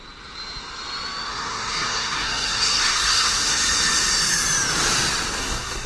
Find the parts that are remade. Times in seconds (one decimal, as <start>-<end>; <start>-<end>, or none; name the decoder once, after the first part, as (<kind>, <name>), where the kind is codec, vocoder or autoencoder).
1.3-3.6 (codec, SNAC); 5.4-5.9